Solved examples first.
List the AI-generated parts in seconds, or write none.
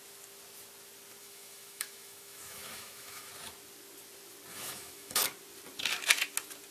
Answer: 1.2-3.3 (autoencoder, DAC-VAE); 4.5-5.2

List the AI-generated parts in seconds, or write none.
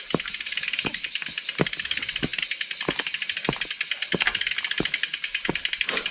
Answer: none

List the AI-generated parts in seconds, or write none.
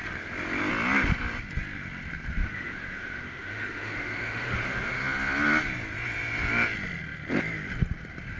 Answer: 2.4-5.0 (autoencoder, DAC-VAE)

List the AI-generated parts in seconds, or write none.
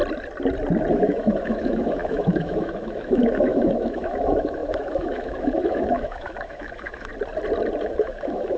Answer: 0.9-7.1 (autoencoder, DAC-VAE); 7.8-8.6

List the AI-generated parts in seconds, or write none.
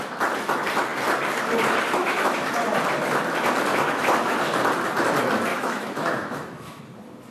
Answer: 2.0-2.5 (autoencoder, DAC-VAE); 3.7-4.4; 5.5-6.8